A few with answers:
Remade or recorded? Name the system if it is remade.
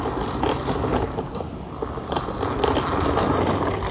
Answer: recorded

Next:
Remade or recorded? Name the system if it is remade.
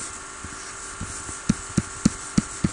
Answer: recorded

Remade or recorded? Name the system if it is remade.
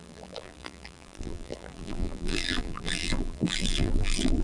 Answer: remade, vocoder, BigVGAN v2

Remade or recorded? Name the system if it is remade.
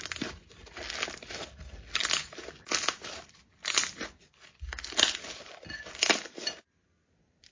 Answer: recorded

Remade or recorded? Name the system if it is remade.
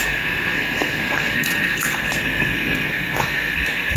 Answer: remade, codec, SNAC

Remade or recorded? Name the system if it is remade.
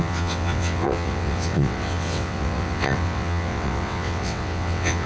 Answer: remade, vocoder, WaveNeXt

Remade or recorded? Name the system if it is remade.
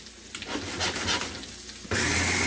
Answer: recorded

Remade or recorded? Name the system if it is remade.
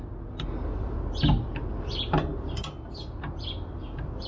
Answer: recorded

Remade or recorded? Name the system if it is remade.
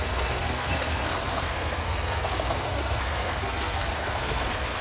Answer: remade, codec, SNAC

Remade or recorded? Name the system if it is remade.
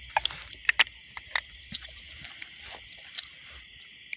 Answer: recorded